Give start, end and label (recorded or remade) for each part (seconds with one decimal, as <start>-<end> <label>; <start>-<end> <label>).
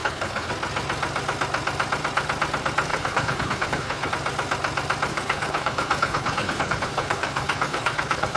0.0-0.5 remade; 0.5-2.9 recorded; 2.9-4.1 remade; 4.1-5.1 recorded; 5.1-8.4 remade